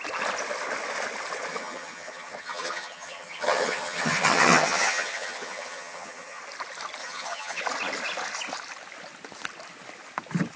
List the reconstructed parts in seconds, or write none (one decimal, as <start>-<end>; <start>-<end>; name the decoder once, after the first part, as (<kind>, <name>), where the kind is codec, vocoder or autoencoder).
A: 1.5-6.4 (vocoder, HiFi-GAN); 7.0-7.6